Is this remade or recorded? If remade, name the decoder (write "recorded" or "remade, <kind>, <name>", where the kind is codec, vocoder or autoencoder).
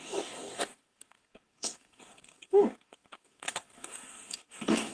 remade, codec, DAC